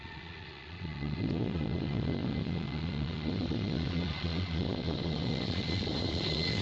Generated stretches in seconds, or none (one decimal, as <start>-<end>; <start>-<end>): 0.0-6.6